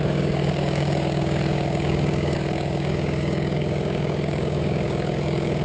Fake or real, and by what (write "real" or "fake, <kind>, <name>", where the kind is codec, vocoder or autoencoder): fake, codec, DAC